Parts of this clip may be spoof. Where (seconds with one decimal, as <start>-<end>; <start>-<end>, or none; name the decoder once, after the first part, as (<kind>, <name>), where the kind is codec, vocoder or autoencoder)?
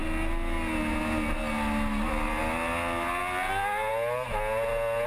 none